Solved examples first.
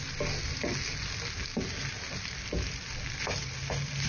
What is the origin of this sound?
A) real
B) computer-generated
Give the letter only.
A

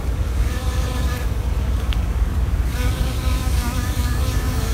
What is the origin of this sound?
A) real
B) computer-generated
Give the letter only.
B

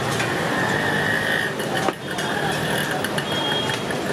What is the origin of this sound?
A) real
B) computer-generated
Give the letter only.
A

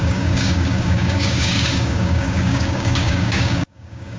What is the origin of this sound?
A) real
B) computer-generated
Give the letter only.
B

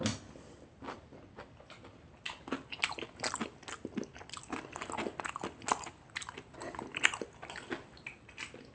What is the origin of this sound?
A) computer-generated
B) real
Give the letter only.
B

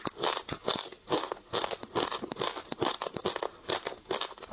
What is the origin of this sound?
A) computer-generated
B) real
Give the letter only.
B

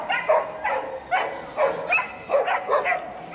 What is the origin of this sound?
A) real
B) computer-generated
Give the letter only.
A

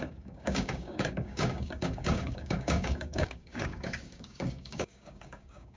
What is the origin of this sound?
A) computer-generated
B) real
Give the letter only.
A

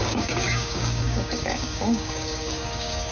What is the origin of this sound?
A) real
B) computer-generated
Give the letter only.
B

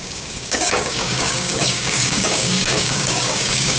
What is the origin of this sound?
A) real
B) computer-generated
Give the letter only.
B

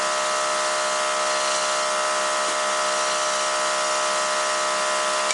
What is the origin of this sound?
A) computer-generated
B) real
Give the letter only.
B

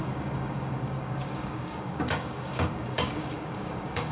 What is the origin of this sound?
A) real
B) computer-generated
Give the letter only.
B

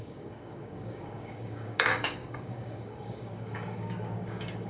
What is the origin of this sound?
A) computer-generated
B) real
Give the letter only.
A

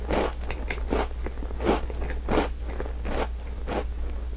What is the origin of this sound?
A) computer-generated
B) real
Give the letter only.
B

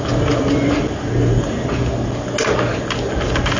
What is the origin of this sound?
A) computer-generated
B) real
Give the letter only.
B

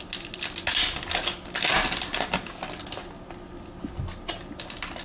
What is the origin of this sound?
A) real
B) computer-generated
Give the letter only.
A